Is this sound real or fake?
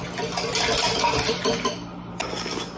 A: real